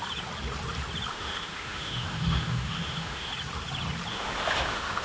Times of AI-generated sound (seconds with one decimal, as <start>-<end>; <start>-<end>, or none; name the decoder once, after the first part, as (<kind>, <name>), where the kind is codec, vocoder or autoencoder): 1.1-3.3 (autoencoder, DAC-VAE); 4.1-5.0